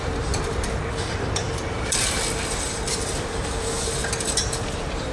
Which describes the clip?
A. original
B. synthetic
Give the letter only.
B